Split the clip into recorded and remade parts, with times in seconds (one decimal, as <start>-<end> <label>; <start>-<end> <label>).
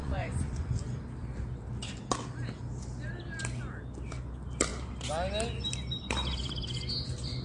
0.0-0.7 remade; 0.7-7.4 recorded